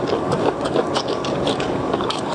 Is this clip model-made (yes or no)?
yes